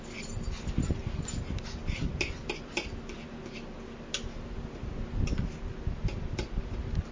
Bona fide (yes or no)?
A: yes